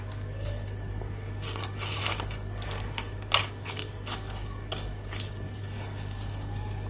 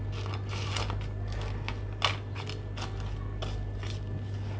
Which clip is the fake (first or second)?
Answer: first